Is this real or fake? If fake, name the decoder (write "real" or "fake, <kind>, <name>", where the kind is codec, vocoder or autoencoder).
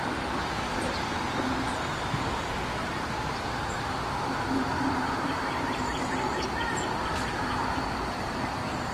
real